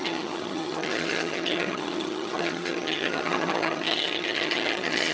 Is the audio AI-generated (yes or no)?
yes